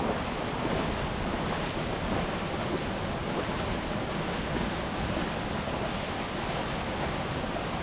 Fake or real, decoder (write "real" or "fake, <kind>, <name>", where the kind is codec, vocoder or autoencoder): real